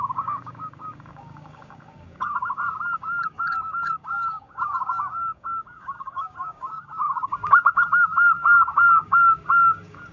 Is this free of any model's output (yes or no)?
no